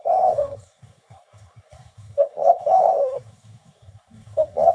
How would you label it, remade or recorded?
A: remade